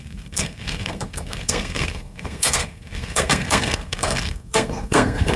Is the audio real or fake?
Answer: fake